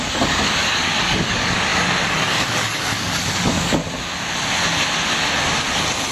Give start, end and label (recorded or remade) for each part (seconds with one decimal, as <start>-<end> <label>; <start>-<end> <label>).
0.0-3.8 remade; 3.8-6.1 recorded